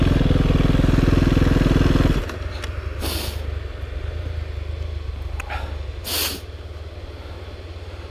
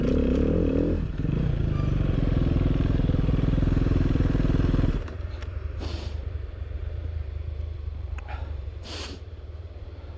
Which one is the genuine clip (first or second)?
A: first